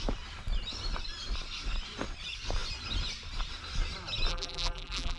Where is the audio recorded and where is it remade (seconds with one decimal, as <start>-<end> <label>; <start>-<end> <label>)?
0.0-4.3 recorded; 4.3-5.2 remade